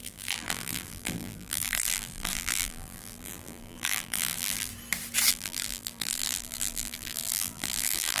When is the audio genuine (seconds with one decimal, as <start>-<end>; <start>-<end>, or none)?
4.7-5.3